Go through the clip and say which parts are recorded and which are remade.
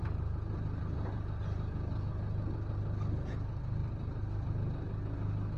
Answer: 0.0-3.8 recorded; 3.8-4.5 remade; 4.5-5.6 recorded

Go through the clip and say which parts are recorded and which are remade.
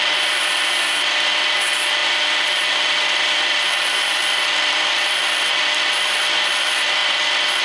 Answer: 0.0-2.0 remade; 2.0-2.7 recorded; 2.7-7.0 remade; 7.0-7.6 recorded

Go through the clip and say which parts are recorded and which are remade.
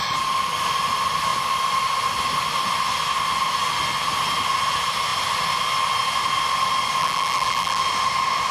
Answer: 0.0-7.0 recorded; 7.0-7.8 remade; 7.8-8.5 recorded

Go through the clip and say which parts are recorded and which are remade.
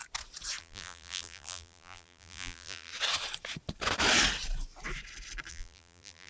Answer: 0.0-0.6 recorded; 0.6-2.9 remade; 2.9-5.5 recorded; 5.5-6.3 remade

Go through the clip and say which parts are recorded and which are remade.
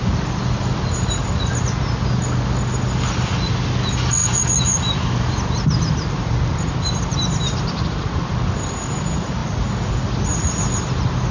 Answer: 0.0-4.2 recorded; 4.2-6.3 remade; 6.3-7.1 recorded; 7.1-8.3 remade; 8.3-11.3 recorded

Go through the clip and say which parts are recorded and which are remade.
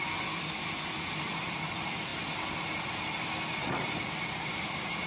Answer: 0.0-5.1 recorded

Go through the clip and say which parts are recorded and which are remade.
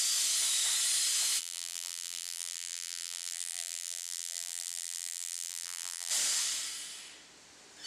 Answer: 0.0-1.4 recorded; 1.4-6.1 remade; 6.1-7.9 recorded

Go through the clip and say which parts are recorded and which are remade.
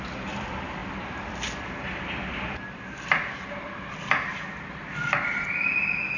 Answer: 0.0-6.2 remade